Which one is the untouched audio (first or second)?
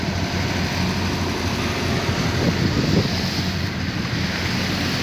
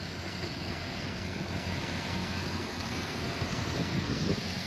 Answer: first